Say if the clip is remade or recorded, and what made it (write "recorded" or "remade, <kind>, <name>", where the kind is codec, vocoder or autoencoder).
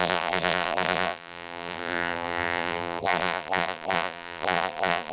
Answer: remade, vocoder, BigVGAN v2